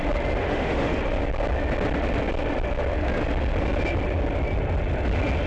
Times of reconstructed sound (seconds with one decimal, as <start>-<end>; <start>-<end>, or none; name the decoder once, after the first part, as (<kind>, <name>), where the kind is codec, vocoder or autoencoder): 0.4-1.0 (autoencoder, DAC-VAE)